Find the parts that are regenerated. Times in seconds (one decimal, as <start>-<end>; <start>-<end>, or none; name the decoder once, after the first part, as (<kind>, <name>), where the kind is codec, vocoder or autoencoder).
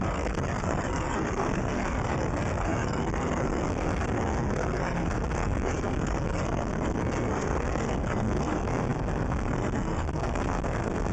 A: 0.0-11.1 (codec, SNAC)